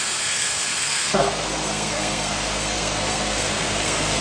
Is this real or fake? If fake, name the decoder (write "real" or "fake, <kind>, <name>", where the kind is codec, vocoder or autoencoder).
fake, codec, SNAC